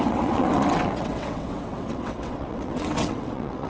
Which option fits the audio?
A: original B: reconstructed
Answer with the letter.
B